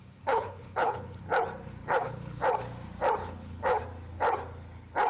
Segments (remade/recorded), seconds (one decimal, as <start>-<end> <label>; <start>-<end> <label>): 0.0-1.2 remade; 1.2-1.8 recorded; 1.8-2.4 remade; 2.4-3.2 recorded; 3.2-3.8 remade; 3.8-5.1 recorded